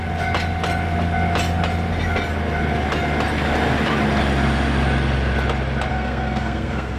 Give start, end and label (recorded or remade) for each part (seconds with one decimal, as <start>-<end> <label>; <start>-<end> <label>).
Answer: 0.0-5.9 recorded; 5.9-7.0 remade